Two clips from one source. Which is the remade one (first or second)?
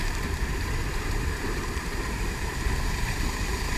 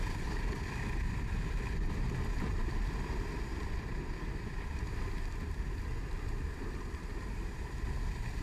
first